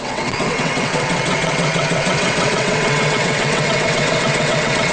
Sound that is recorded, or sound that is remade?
remade